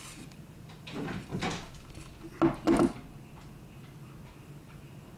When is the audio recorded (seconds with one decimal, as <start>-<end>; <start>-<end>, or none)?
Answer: 1.3-4.4